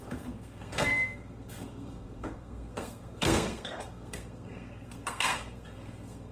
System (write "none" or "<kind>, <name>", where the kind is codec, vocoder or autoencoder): codec, SNAC